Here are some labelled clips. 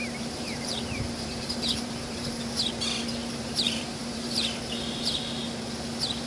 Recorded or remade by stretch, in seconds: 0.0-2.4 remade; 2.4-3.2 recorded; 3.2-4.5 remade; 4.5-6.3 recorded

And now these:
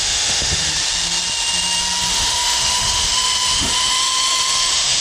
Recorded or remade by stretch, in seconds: 0.0-0.7 remade; 0.7-2.1 recorded; 2.1-5.0 remade

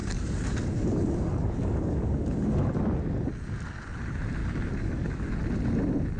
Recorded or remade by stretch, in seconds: 0.0-2.8 remade; 2.8-4.4 recorded; 4.4-5.3 remade; 5.3-6.2 recorded

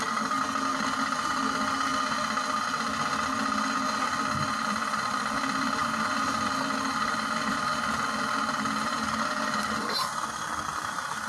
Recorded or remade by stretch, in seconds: 0.0-1.9 remade; 1.9-2.6 recorded; 2.6-11.3 remade

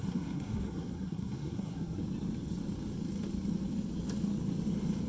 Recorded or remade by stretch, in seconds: 0.0-2.0 remade; 2.0-5.1 recorded